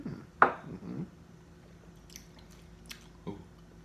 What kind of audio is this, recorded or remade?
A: recorded